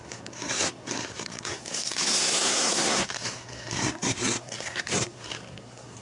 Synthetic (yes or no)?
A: yes